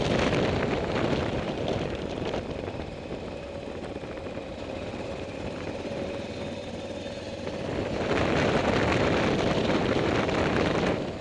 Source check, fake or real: fake